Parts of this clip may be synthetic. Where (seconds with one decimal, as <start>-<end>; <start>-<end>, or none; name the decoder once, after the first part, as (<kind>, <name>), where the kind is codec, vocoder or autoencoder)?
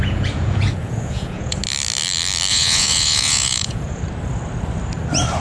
0.0-1.6 (vocoder, Vocos); 2.5-4.0